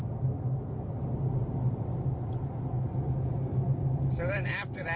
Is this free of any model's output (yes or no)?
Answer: yes